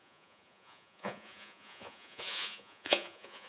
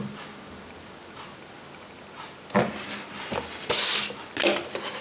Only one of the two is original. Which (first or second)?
second